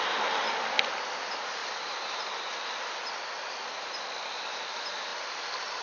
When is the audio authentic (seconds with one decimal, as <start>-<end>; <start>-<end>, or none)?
0.0-1.6; 2.5-5.8